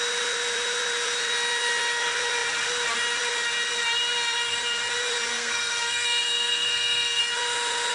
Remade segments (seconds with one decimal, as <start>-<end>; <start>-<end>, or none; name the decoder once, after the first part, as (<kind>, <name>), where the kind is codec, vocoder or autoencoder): 5.3-7.2 (codec, SNAC)